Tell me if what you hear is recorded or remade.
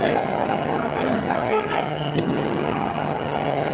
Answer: remade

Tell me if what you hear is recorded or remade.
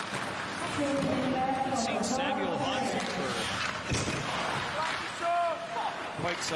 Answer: recorded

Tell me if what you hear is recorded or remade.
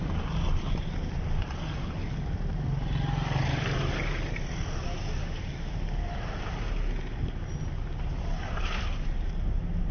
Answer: recorded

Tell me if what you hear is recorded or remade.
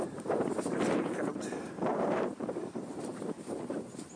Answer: remade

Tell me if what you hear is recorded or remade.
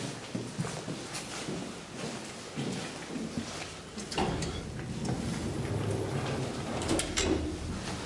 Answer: recorded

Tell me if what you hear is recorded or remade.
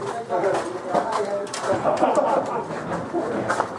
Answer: recorded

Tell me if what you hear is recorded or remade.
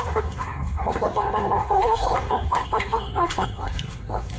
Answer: remade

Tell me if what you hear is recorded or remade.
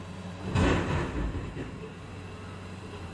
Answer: recorded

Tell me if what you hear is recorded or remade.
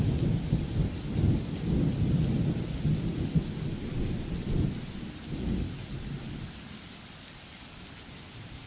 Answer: recorded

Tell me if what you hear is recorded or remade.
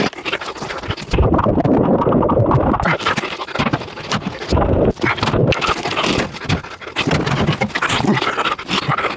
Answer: recorded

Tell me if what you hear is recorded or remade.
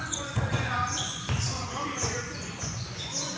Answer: remade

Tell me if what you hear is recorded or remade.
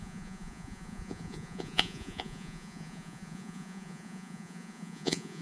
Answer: remade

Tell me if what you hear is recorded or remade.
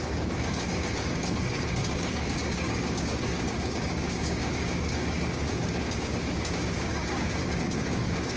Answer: remade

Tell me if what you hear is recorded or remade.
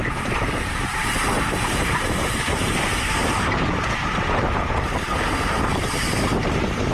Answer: remade